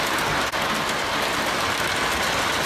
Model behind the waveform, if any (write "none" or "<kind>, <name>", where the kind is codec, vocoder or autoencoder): none